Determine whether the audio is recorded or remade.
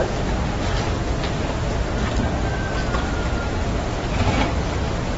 recorded